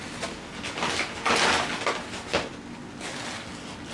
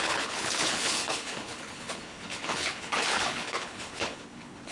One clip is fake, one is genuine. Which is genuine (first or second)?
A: first